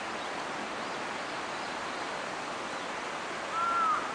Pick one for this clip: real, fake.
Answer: real